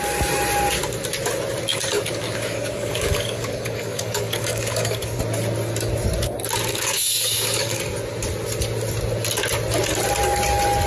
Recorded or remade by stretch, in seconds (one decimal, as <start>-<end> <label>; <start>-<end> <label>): 0.0-1.7 recorded; 1.7-5.2 remade; 5.2-6.7 recorded; 6.7-7.8 remade; 7.8-10.9 recorded